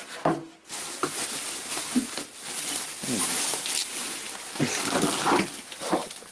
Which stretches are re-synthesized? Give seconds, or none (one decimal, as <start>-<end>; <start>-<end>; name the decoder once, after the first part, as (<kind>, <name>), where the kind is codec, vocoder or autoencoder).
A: none